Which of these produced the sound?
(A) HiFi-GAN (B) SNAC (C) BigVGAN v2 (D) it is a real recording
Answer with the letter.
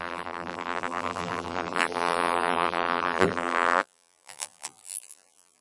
C